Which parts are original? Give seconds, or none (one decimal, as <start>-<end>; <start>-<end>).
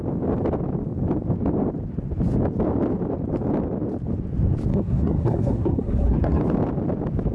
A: 0.0-4.7; 6.4-7.3